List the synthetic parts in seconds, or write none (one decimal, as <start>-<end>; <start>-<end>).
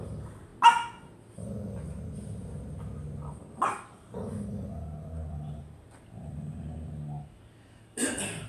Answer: none